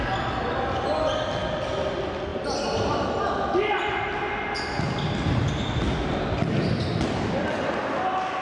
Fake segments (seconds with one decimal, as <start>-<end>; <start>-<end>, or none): none